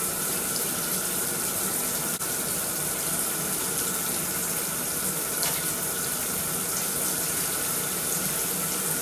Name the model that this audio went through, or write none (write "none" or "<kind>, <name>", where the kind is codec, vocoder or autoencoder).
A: none